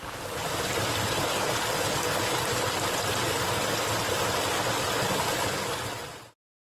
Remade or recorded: recorded